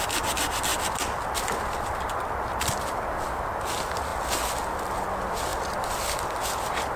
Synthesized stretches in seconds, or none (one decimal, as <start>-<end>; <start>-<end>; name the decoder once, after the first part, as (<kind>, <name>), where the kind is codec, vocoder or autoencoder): none